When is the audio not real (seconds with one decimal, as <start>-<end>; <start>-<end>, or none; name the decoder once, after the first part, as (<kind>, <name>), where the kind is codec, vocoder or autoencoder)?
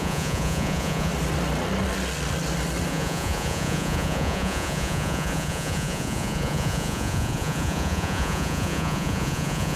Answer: 0.0-1.1 (vocoder, Vocos); 2.9-9.8